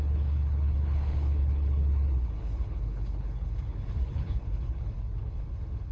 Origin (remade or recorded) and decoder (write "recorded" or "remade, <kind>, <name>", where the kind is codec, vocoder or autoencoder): remade, codec, HILCodec